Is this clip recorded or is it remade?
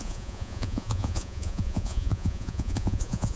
remade